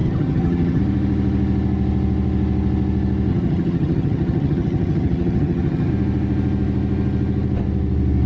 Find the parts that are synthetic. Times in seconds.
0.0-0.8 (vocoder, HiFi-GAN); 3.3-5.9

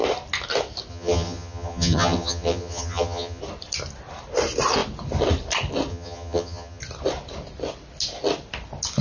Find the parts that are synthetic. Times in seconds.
0.9-3.4 (vocoder, HiFi-GAN); 5.9-6.8

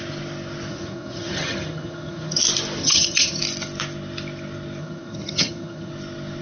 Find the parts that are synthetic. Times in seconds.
0.7-2.4 (vocoder, HiFi-GAN); 2.8-3.4; 4.8-5.9

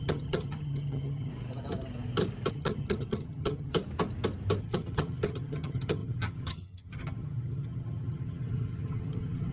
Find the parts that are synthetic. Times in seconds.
0.0-1.3 (vocoder, HiFi-GAN); 2.5-3.7; 4.6-9.5

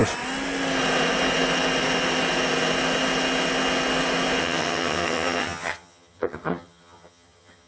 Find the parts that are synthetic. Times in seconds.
4.4-7.7 (vocoder, HiFi-GAN)

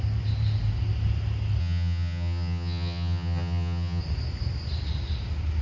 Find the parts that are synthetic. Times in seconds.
1.6-4.0 (vocoder, HiFi-GAN)

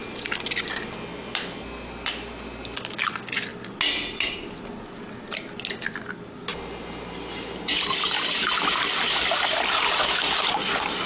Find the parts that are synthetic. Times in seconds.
none

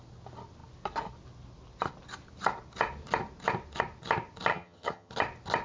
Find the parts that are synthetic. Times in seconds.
4.5-5.1 (vocoder, HiFi-GAN)